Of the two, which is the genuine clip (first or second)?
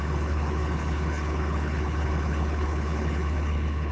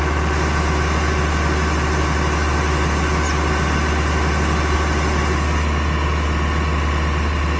second